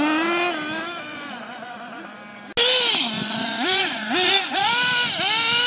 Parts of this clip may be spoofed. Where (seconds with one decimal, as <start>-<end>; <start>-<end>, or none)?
1.1-2.2; 3.2-4.7

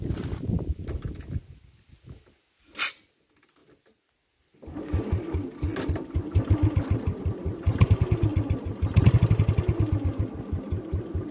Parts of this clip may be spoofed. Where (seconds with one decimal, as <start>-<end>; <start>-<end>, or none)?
none

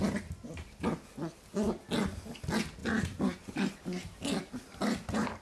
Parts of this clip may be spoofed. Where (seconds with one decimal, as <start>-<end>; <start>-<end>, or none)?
2.8-5.4

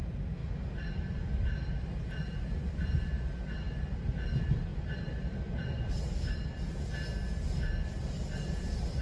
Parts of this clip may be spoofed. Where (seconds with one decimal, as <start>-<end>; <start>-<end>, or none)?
none

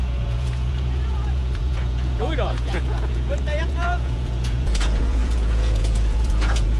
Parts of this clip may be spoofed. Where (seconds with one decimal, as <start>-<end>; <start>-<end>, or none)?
0.0-6.8

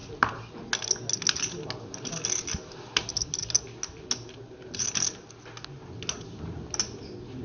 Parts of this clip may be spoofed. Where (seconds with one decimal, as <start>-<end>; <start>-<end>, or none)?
none

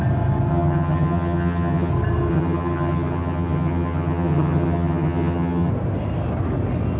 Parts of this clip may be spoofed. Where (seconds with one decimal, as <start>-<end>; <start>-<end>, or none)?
0.5-1.9; 2.3-5.7